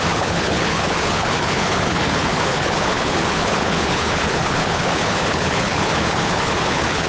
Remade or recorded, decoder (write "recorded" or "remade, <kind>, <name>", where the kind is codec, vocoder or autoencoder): remade, codec, HILCodec